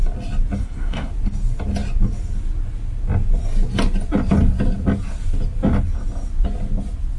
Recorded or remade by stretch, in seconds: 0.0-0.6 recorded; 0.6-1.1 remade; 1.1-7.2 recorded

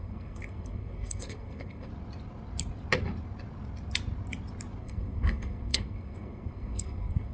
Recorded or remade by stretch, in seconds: 0.0-1.9 remade; 1.9-4.8 recorded; 4.8-7.3 remade

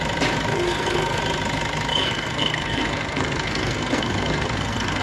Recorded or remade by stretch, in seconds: 0.0-0.5 recorded; 0.5-1.2 remade; 1.2-1.9 recorded; 1.9-5.0 remade